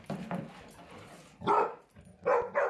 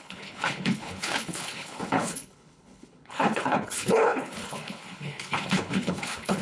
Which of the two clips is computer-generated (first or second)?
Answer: second